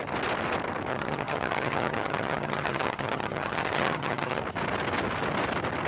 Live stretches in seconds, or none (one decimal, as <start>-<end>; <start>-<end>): 0.0-0.9; 4.4-5.9